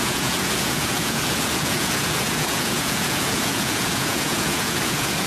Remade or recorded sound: remade